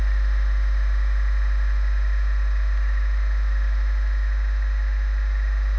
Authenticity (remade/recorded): recorded